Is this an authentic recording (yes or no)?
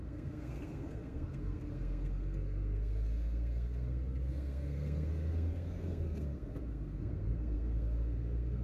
no